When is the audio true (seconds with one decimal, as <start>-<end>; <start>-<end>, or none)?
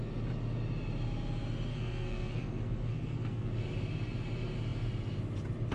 0.0-1.7; 3.5-5.7